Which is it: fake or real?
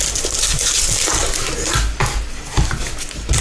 real